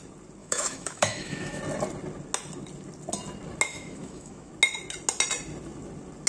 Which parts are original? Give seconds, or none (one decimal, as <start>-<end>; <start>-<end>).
0.0-0.4; 1.6-3.7; 4.5-6.3